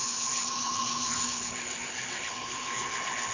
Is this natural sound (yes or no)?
no